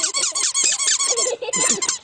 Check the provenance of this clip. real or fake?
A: real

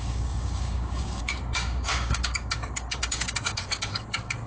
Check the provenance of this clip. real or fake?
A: fake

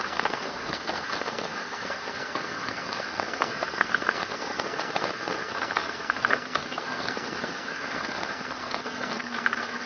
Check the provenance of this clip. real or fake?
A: fake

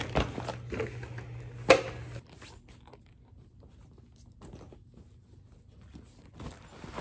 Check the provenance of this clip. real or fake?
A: real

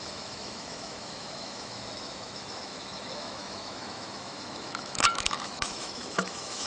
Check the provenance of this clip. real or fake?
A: fake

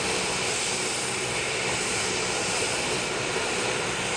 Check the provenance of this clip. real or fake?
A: real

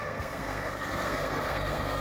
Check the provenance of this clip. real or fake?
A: fake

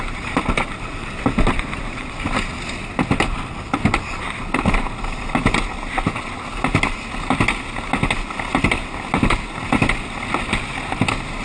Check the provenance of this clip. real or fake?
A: real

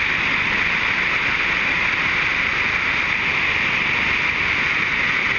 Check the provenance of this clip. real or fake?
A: real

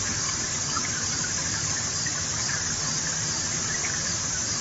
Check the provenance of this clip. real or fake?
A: real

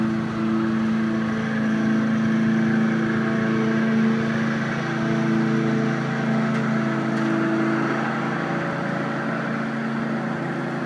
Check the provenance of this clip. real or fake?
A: real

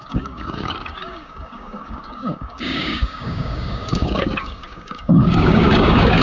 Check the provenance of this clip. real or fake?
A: fake